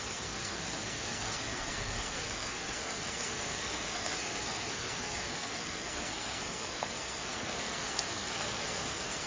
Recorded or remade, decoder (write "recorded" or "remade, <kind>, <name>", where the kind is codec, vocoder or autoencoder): remade, codec, SNAC